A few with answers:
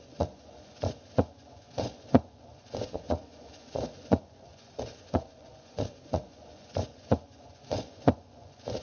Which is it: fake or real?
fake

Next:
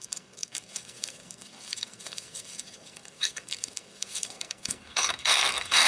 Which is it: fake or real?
fake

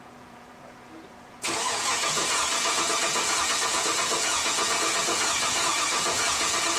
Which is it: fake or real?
fake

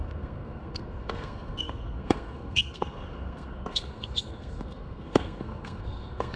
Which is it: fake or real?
fake